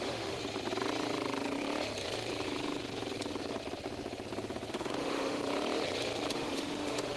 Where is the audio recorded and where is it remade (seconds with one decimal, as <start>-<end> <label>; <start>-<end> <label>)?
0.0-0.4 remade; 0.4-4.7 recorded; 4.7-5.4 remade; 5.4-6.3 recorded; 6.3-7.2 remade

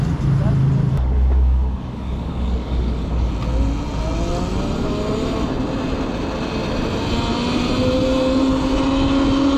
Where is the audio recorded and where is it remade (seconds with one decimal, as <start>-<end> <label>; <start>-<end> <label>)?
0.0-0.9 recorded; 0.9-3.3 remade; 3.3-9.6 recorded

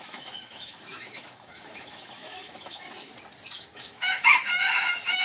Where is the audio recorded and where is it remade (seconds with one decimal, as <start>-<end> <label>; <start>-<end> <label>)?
0.0-3.1 remade; 3.1-3.6 recorded; 3.6-5.2 remade